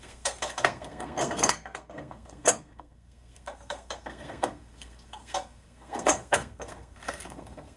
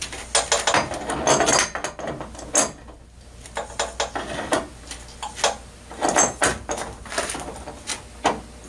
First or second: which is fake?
first